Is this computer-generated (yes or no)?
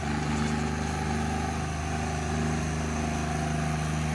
no